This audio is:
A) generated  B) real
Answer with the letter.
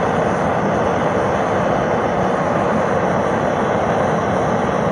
B